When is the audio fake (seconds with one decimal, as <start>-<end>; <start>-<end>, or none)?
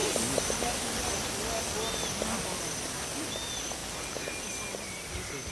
none